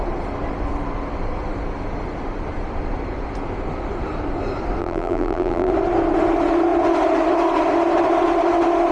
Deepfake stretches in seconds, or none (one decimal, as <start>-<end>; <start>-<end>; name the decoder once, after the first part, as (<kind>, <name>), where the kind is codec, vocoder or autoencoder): 4.8-5.7 (vocoder, BigVGAN v2)